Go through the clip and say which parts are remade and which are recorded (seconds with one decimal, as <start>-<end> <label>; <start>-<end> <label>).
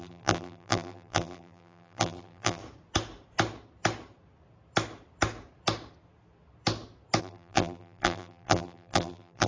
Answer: 0.0-2.6 remade; 2.6-7.2 recorded; 7.2-9.5 remade